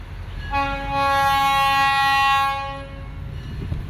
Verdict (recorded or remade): recorded